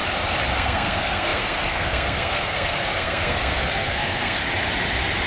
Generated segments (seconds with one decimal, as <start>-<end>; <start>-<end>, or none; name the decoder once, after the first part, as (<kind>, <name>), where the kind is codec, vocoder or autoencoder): 0.5-4.4 (codec, SNAC)